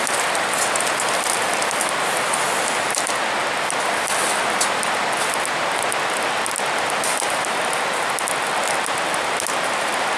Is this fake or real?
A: real